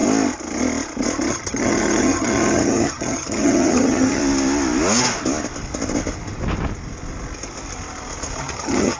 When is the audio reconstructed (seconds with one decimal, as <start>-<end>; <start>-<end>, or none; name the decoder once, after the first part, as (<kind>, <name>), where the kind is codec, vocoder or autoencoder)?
1.3-4.2 (vocoder, HiFi-GAN); 8.4-9.0